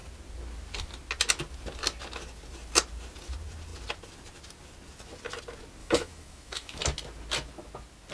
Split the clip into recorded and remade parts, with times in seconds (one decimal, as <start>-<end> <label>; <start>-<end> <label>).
0.0-5.8 recorded; 5.8-6.8 remade; 6.8-8.1 recorded